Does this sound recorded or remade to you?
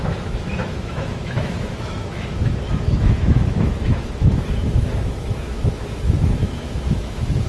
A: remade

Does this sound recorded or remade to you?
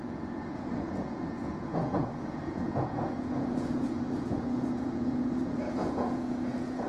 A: remade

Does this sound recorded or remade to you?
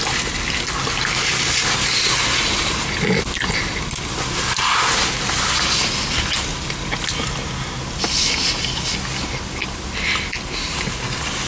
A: recorded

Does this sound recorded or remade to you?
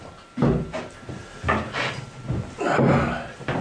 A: recorded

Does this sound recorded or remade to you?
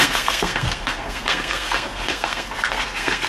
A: remade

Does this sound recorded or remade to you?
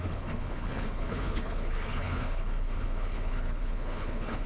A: remade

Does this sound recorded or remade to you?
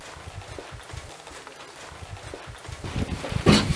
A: recorded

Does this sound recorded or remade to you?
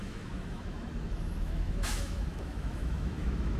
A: remade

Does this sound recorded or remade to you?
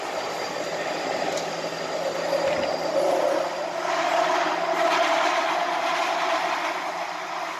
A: recorded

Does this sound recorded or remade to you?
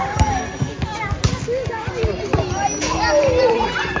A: recorded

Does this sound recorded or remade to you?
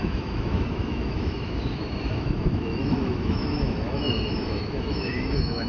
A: remade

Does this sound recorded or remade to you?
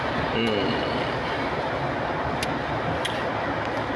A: recorded